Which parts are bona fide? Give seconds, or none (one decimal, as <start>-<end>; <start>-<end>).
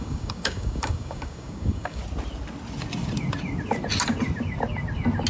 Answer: 2.0-5.3